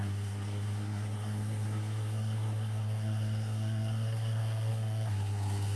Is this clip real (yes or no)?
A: no